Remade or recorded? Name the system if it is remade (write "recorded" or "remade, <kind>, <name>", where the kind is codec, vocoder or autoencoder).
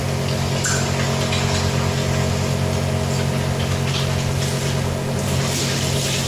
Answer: recorded